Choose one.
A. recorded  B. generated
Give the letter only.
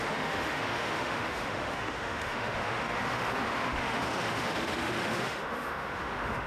B